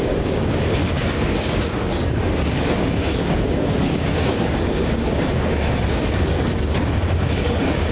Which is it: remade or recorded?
remade